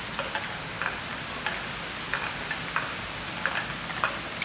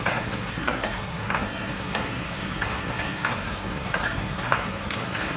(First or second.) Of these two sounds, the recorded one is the first